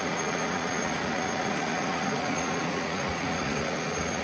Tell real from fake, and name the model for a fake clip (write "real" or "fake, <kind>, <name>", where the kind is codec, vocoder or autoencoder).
fake, vocoder, Vocos